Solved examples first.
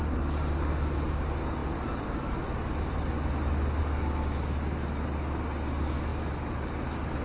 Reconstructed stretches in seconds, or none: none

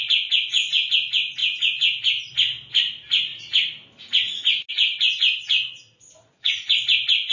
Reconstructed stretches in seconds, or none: 6.2-7.3

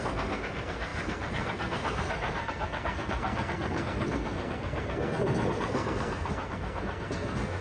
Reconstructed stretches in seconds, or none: 0.0-7.6

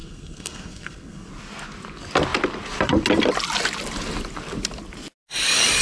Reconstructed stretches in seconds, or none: 0.0-1.3

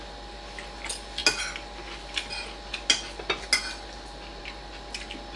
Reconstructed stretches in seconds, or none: none

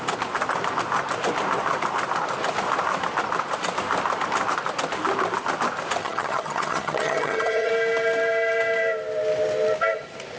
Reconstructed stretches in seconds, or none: 6.0-7.7

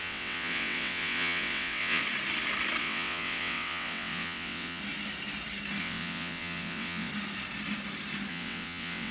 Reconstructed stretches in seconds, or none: 0.0-2.0; 2.8-4.8; 5.8-7.1; 8.3-9.1